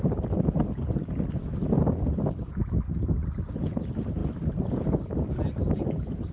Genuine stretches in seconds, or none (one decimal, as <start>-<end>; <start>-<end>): 0.0-6.3